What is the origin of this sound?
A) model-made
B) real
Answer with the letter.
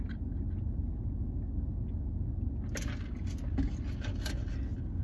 B